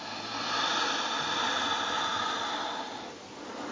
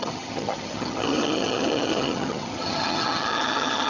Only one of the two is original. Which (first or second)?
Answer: first